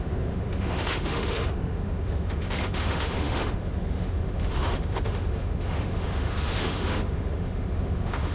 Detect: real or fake fake